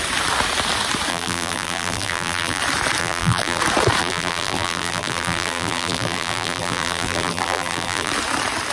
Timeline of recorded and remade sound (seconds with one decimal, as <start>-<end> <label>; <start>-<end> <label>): 0.0-1.1 recorded; 1.1-2.6 remade; 2.6-3.0 recorded; 3.0-3.6 remade; 3.6-4.0 recorded; 4.0-8.1 remade; 8.1-8.7 recorded